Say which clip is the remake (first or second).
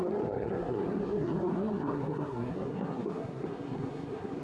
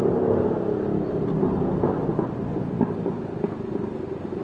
first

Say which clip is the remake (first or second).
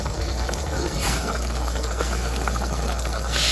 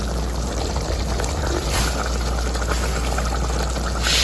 first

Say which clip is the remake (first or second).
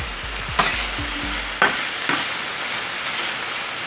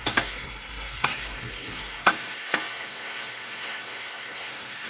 second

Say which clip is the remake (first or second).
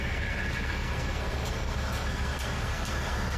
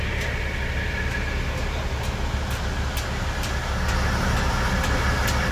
first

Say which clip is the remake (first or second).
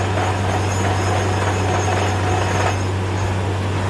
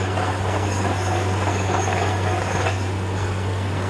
second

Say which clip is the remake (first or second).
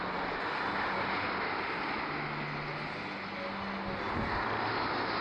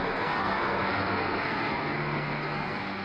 second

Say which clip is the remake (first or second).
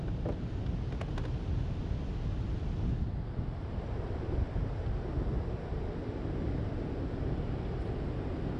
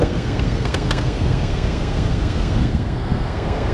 second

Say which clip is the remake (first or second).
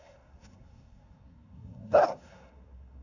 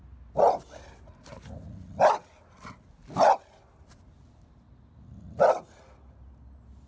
first